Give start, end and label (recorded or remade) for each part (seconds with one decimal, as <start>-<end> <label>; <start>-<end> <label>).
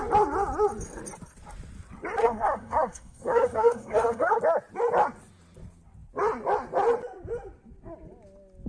0.0-2.2 recorded; 2.2-4.4 remade; 4.4-8.7 recorded